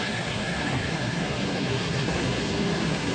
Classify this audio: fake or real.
fake